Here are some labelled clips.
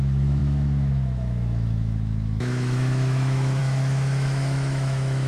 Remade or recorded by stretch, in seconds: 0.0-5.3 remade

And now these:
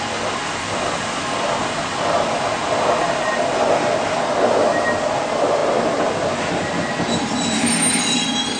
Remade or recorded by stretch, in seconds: 0.0-8.6 recorded

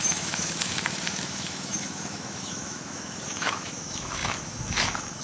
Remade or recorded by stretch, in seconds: 0.0-5.2 remade

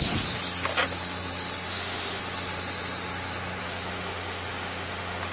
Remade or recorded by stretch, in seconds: 0.0-1.7 recorded; 1.7-2.2 remade; 2.2-3.6 recorded; 3.6-5.3 remade